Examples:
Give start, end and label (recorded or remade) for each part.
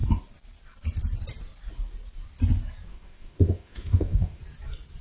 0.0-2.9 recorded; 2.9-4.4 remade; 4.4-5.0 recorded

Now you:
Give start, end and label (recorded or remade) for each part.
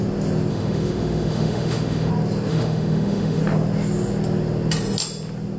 0.0-0.5 recorded; 0.5-2.1 remade; 2.1-2.5 recorded; 2.5-3.4 remade; 3.4-5.6 recorded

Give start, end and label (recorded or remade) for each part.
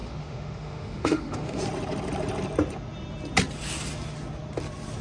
0.0-1.6 remade; 1.6-5.0 recorded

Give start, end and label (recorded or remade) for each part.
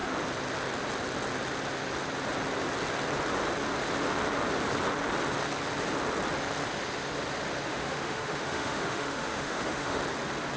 0.0-7.7 recorded; 7.7-10.0 remade; 10.0-10.6 recorded